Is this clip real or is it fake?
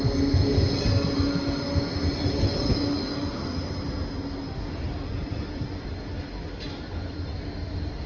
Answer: real